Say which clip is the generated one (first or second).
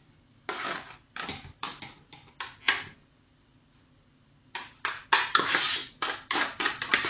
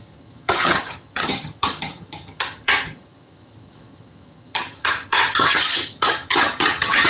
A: second